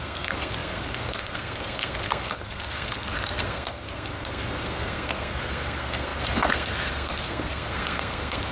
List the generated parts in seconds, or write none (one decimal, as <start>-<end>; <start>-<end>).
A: 0.0-8.5